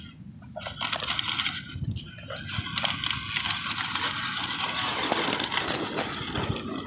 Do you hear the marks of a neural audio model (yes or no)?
no